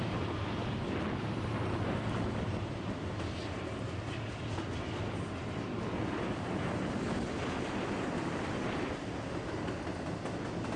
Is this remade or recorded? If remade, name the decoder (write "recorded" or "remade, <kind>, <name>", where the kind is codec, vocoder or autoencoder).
recorded